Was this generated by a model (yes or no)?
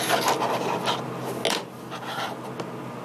no